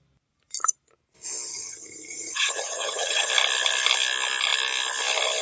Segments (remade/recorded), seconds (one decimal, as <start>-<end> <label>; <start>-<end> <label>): 0.0-1.5 recorded; 1.5-3.3 remade; 3.3-5.4 recorded

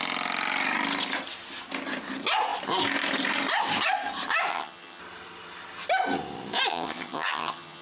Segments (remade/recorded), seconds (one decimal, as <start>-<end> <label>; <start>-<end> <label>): 0.0-4.5 recorded; 4.5-5.0 remade; 5.0-6.7 recorded; 6.7-7.8 remade

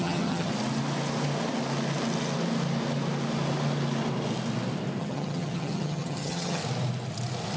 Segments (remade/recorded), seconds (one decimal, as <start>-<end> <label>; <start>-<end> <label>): 0.0-0.5 remade; 0.5-5.0 recorded; 5.0-6.6 remade; 6.6-7.6 recorded

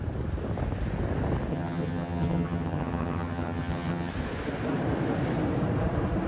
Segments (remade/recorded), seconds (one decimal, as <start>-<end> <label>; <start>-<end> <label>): 0.0-1.5 recorded; 1.5-4.1 remade; 4.1-6.3 recorded